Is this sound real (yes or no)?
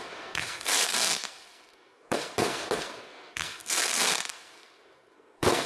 no